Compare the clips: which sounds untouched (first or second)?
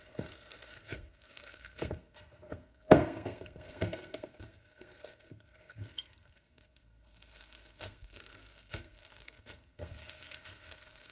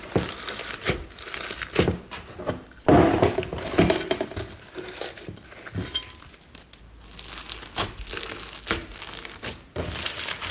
second